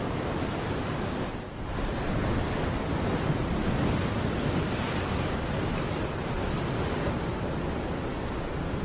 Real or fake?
real